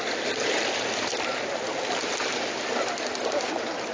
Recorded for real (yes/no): yes